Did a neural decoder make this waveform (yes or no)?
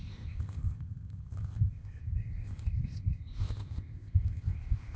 yes